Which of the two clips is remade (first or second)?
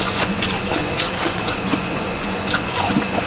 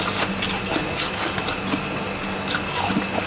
first